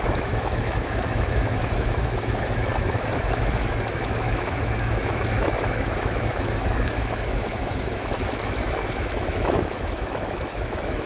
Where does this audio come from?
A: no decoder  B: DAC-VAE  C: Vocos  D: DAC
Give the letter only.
B